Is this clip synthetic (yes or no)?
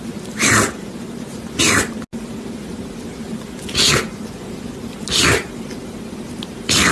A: no